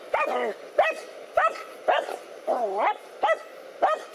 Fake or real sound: real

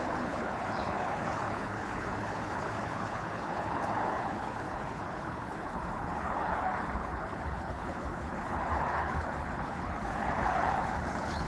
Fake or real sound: fake